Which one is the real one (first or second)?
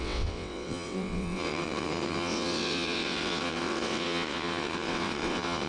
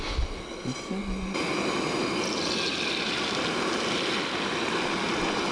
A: second